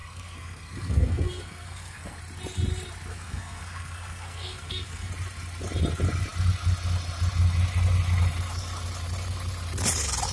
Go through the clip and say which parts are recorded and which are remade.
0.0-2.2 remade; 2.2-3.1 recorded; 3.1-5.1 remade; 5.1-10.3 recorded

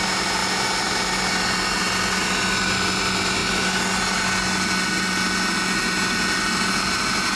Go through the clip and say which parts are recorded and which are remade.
0.0-7.4 recorded

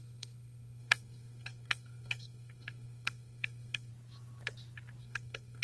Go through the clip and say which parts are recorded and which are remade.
0.0-3.9 remade; 3.9-5.0 recorded; 5.0-5.6 remade

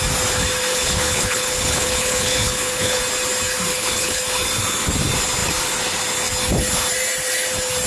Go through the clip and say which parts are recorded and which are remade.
0.0-0.7 recorded; 0.7-3.0 remade; 3.0-3.7 recorded; 3.7-4.2 remade; 4.2-7.9 recorded

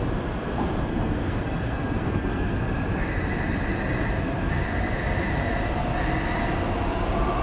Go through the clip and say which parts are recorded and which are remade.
0.0-0.9 recorded; 0.9-2.6 remade; 2.6-7.4 recorded

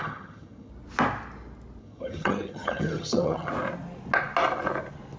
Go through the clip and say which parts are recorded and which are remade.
0.0-0.7 remade; 0.7-1.8 recorded; 1.8-3.5 remade; 3.5-5.2 recorded